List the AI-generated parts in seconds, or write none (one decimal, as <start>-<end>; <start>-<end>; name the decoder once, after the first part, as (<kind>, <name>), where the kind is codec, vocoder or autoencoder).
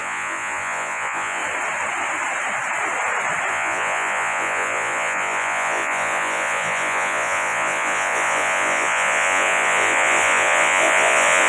0.0-1.4 (vocoder, Vocos); 3.5-11.5